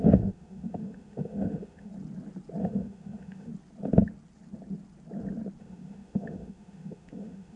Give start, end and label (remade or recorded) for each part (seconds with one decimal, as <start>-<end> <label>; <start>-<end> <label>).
0.0-1.9 remade; 1.9-2.6 recorded; 2.6-3.5 remade; 3.5-5.6 recorded; 5.6-7.6 remade